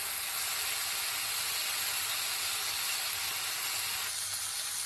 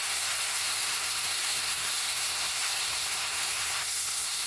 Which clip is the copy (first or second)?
second